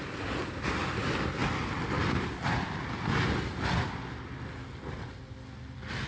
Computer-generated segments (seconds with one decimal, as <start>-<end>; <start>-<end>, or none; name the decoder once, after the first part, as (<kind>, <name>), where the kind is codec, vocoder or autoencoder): none